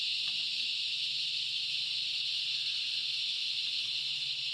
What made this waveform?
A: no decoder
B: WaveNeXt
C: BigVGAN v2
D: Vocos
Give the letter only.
C